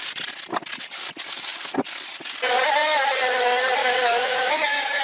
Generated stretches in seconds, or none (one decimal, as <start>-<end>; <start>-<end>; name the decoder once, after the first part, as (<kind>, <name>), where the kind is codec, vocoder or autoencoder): 3.8-5.0 (codec, DAC)